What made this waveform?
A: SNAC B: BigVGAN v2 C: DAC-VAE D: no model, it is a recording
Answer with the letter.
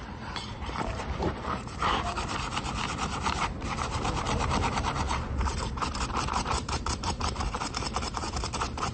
B